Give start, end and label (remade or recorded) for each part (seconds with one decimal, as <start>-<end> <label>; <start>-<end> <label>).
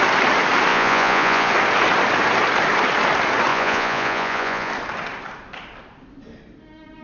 0.0-0.7 recorded; 0.7-1.5 remade; 1.5-3.5 recorded; 3.5-4.7 remade; 4.7-7.0 recorded